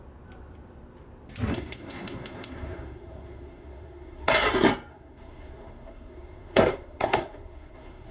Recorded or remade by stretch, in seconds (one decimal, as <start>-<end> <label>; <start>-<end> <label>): 0.0-1.5 recorded; 1.5-4.3 remade; 4.3-4.9 recorded; 4.9-8.1 remade